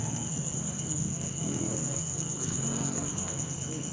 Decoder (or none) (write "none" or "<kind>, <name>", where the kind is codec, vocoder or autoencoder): codec, SNAC